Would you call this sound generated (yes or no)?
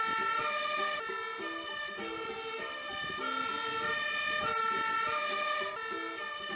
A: no